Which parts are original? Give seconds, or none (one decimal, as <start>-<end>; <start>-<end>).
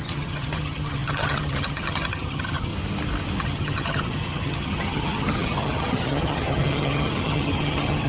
2.7-3.4